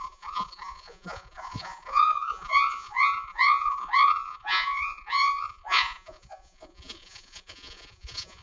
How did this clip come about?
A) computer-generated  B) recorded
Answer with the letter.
A